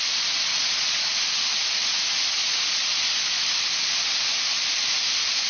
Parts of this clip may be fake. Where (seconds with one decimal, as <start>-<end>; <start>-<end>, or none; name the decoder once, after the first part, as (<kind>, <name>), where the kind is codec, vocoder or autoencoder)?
0.5-1.2 (vocoder, Vocos); 2.4-3.4